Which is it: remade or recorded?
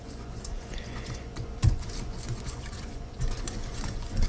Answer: remade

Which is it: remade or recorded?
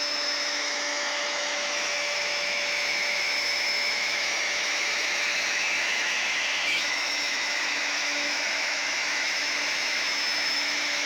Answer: remade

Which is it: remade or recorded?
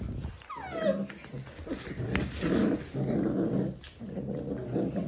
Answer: recorded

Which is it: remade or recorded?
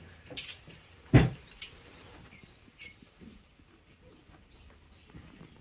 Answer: remade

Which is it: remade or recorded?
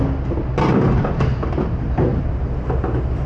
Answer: recorded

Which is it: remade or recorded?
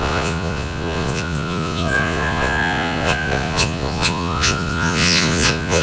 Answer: remade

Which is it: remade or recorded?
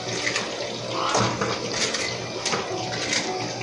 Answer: recorded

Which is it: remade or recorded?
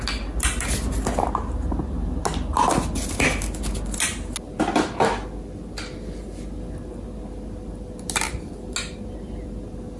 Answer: recorded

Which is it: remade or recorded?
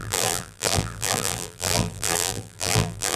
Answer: remade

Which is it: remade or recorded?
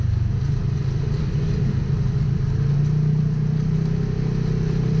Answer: recorded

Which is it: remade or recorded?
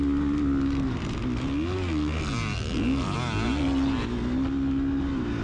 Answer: recorded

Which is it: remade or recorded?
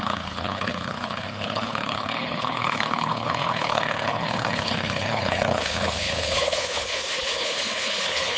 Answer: remade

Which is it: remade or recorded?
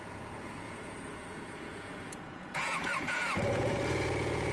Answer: remade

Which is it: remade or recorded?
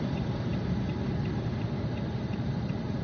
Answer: remade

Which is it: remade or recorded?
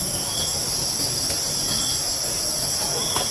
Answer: recorded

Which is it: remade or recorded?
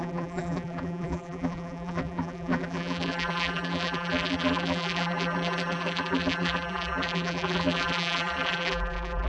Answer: remade